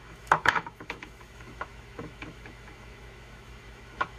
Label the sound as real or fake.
fake